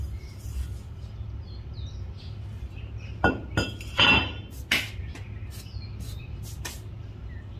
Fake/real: real